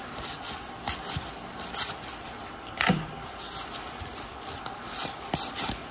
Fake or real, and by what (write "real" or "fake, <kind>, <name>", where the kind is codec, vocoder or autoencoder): fake, vocoder, BigVGAN v2